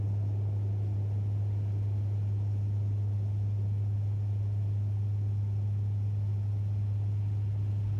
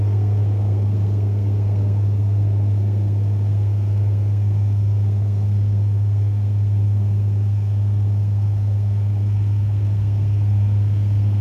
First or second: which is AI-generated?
second